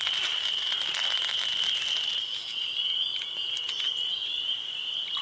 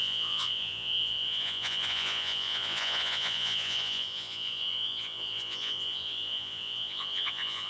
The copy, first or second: second